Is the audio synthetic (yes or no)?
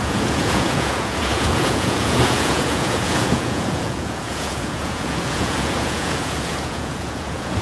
yes